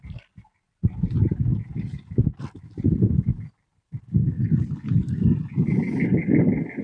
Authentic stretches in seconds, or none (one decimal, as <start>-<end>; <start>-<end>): 0.0-6.8